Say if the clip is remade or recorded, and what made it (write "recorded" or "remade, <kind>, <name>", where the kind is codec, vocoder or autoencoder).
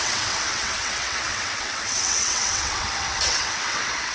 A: remade, vocoder, WaveNeXt